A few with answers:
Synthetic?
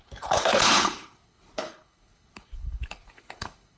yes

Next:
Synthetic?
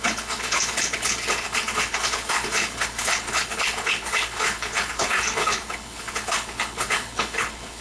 yes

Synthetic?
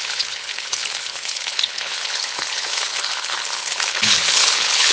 yes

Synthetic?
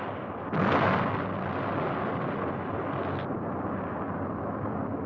no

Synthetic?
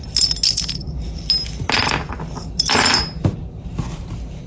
no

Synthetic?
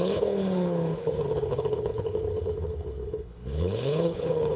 yes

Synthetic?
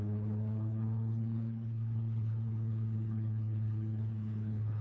yes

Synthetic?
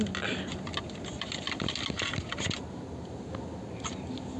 no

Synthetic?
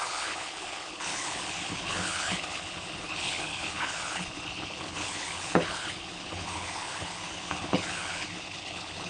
yes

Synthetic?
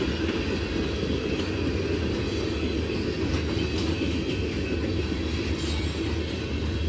no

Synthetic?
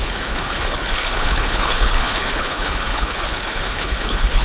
yes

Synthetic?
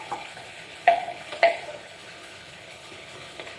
yes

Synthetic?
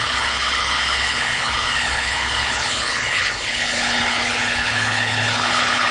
yes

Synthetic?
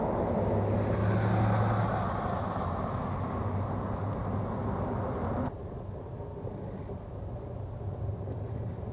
no